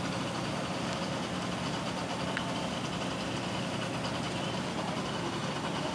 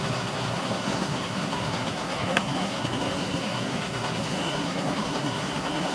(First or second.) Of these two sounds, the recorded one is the first